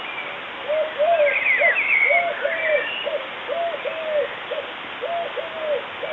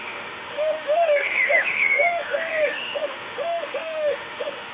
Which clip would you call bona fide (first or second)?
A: first